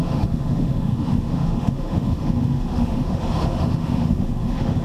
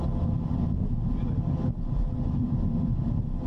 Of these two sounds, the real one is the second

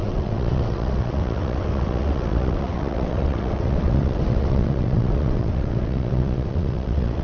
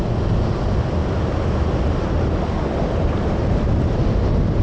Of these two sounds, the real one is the second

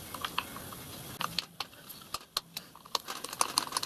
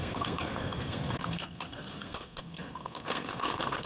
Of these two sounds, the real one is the first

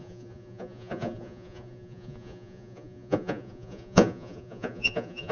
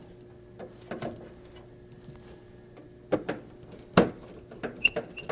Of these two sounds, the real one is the second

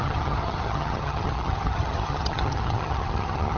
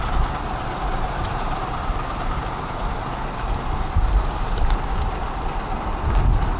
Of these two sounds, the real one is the second